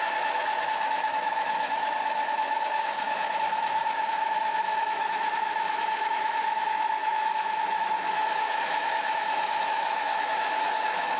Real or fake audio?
fake